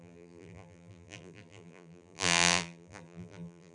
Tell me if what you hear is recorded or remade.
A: remade